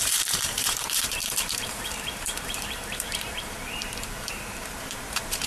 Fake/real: fake